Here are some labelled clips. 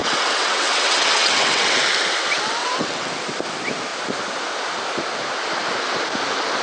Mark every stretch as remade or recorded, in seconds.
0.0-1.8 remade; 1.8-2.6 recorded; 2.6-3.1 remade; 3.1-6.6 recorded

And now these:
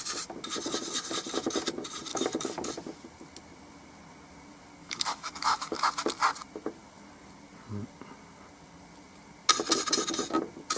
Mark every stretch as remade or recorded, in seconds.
0.0-2.1 recorded; 2.1-2.7 remade; 2.7-4.8 recorded; 4.8-5.8 remade; 5.8-10.8 recorded

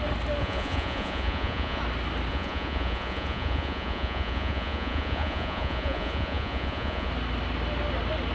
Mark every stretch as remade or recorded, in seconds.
0.0-0.4 recorded; 0.4-1.8 remade; 1.8-2.3 recorded; 2.3-7.1 remade; 7.1-8.3 recorded

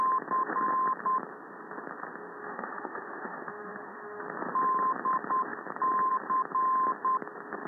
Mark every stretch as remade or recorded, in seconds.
0.0-2.4 recorded; 2.4-4.2 remade; 4.2-7.7 recorded

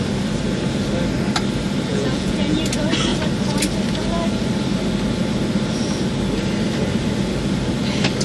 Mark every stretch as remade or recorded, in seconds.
0.0-1.9 recorded; 1.9-2.6 remade; 2.6-8.2 recorded

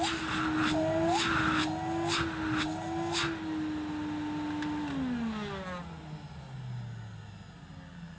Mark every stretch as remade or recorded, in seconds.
0.0-8.2 recorded